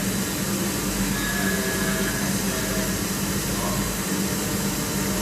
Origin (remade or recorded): remade